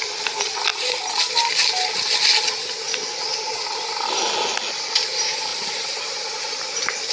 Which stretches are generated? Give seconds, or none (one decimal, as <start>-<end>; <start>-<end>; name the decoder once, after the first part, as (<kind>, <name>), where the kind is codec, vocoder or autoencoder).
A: 0.7-1.3 (vocoder, BigVGAN v2); 3.3-4.2; 5.5-7.1